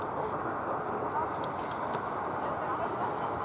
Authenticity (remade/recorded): recorded